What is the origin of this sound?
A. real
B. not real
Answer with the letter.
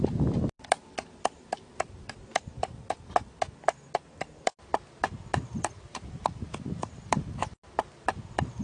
B